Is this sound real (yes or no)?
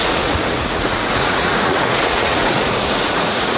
no